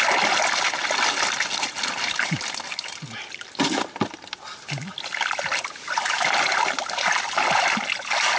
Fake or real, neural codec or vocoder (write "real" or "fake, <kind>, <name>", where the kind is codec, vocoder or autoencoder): real